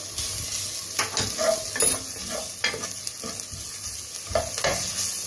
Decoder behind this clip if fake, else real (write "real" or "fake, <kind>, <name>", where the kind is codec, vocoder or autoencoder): real